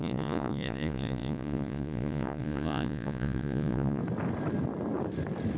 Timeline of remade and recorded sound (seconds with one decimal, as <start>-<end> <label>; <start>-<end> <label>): 0.0-4.0 remade; 4.0-5.6 recorded